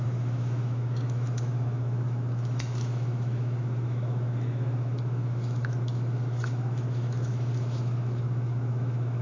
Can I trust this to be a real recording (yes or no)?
no